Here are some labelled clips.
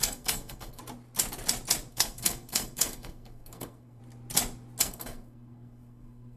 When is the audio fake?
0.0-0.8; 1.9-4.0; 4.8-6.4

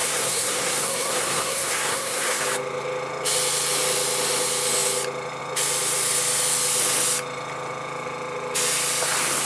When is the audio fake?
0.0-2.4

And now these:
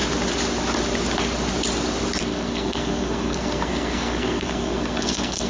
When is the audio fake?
2.2-5.5

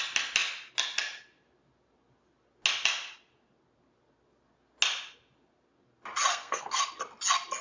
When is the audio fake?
6.3-6.8

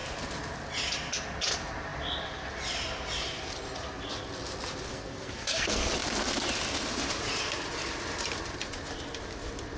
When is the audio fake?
4.9-5.9

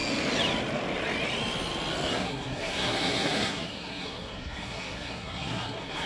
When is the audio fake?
2.1-6.1